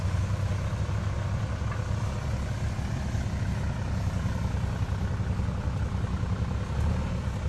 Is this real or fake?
real